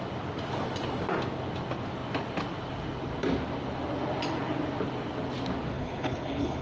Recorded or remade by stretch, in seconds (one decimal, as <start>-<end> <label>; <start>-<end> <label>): 0.0-5.7 recorded; 5.7-6.6 remade